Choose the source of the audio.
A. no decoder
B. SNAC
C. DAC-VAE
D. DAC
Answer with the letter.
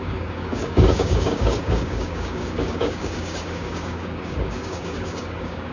D